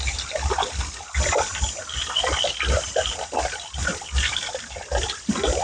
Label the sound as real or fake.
real